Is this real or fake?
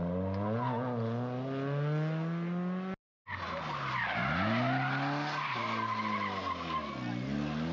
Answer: real